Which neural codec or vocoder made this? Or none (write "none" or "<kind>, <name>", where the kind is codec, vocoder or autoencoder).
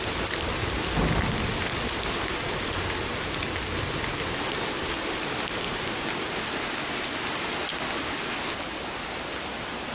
none